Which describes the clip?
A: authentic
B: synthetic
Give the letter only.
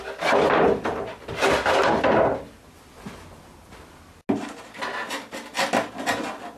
A